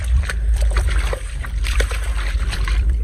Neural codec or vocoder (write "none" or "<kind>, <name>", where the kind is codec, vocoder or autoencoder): vocoder, BigVGAN v2